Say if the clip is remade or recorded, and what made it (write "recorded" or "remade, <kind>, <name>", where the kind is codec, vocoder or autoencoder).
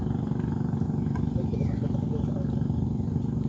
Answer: recorded